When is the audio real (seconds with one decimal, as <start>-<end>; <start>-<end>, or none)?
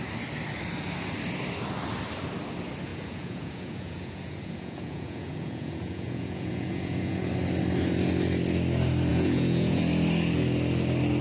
0.0-2.9; 7.3-9.1; 9.8-11.2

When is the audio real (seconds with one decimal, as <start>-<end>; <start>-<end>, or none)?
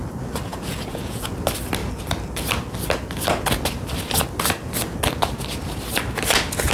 0.0-0.5; 1.3-6.7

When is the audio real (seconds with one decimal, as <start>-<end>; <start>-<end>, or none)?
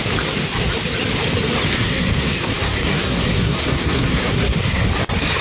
0.0-1.7; 4.9-5.4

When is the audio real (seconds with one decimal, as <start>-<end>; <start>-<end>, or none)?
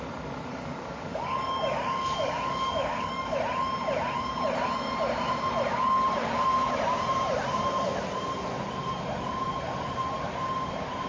0.0-0.5; 3.4-11.1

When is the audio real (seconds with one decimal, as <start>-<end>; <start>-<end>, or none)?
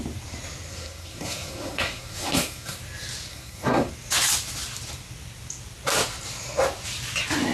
0.0-0.7; 2.8-3.3; 3.9-7.5